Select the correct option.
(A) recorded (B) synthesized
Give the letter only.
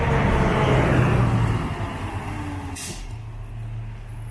A